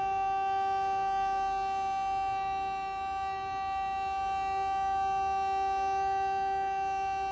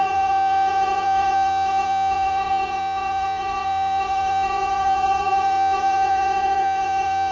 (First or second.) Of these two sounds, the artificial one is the second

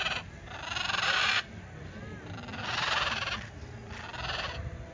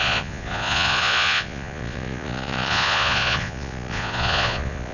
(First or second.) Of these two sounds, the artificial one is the second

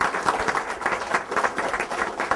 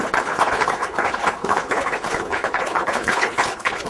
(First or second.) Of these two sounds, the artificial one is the second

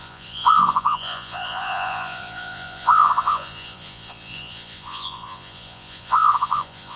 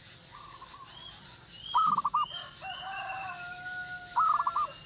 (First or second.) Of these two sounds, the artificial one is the first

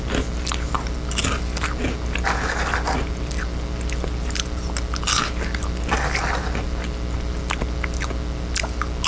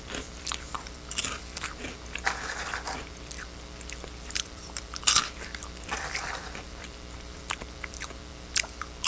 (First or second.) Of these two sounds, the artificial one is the second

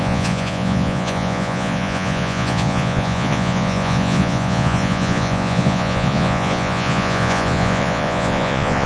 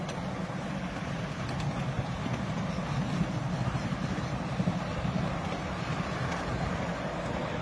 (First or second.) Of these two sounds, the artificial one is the first